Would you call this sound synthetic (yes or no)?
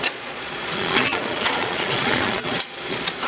yes